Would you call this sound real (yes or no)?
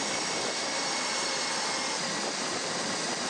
no